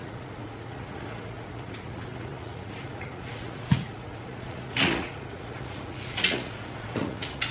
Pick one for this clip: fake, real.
fake